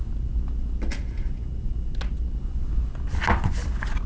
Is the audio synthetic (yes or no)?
no